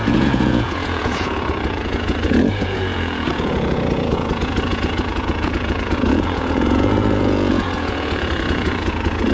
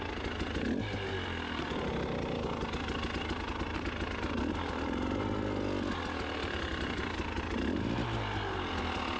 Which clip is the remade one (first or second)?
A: first